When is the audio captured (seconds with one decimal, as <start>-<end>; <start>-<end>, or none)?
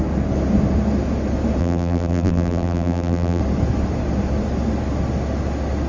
0.0-1.6; 3.4-5.9